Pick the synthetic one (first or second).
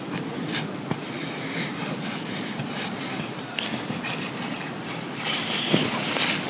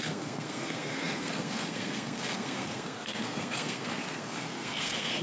second